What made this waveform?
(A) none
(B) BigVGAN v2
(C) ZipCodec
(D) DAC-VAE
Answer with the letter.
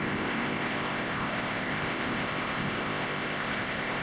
C